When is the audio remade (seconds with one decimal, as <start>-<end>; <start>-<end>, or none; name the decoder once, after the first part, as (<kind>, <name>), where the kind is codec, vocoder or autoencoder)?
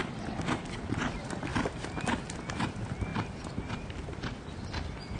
3.1-4.6 (vocoder, BigVGAN v2)